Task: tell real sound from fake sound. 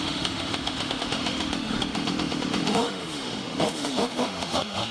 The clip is fake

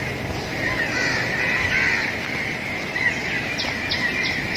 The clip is real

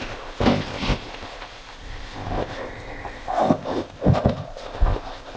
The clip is fake